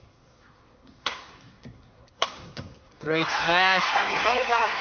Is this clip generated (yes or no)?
yes